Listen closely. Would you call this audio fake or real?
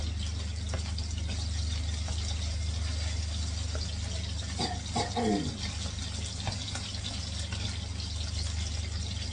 real